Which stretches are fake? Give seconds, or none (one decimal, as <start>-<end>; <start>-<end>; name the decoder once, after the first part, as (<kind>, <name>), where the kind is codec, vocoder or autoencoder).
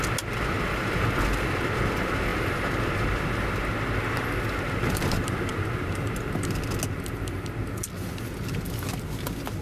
none